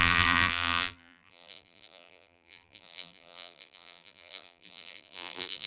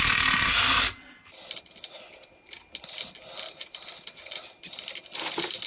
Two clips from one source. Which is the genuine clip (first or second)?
second